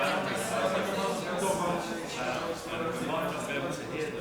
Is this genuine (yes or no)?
yes